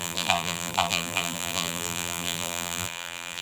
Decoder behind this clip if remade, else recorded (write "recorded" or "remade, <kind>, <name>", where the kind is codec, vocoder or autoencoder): remade, vocoder, BigVGAN v2